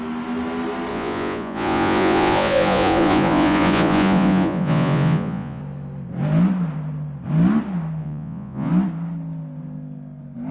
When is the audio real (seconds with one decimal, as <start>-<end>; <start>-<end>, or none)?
0.0-0.9; 5.6-8.0; 8.7-10.5